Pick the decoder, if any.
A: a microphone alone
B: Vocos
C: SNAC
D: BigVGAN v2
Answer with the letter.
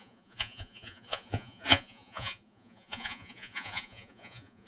B